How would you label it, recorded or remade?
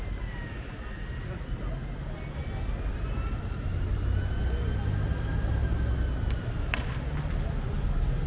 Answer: recorded